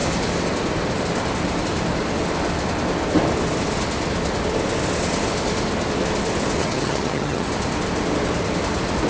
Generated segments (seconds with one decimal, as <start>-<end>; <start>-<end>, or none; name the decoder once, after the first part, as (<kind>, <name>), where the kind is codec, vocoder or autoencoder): 6.6-7.5 (vocoder, HiFi-GAN)

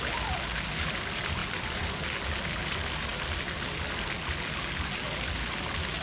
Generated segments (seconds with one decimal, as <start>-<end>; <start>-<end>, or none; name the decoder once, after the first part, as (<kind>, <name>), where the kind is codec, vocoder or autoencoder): none

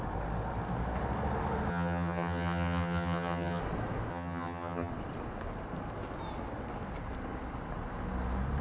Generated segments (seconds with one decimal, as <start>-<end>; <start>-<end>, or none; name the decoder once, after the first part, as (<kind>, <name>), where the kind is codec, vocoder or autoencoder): 1.7-3.6 (vocoder, HiFi-GAN); 4.1-4.9

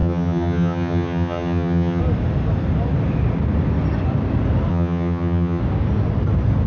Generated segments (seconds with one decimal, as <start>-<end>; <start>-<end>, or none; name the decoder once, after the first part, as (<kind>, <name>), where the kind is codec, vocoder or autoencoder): 0.0-2.0 (vocoder, HiFi-GAN); 4.7-5.6

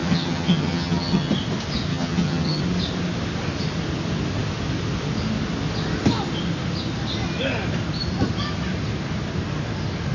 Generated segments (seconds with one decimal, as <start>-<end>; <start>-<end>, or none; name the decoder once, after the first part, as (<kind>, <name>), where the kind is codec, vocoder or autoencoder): 0.0-1.3 (vocoder, HiFi-GAN); 1.9-2.6

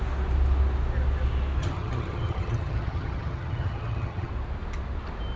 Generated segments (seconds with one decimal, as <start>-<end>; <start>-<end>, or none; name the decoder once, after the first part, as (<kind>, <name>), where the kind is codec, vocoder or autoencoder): 1.6-4.3 (vocoder, HiFi-GAN)

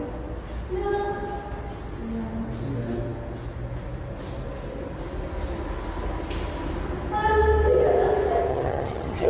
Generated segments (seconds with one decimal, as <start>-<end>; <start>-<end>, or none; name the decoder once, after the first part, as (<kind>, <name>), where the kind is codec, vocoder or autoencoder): 8.5-9.3 (vocoder, HiFi-GAN)

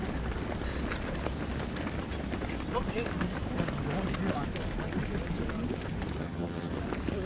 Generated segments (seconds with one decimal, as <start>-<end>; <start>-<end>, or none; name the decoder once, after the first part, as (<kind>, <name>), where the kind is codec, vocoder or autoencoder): 6.2-6.7 (vocoder, HiFi-GAN)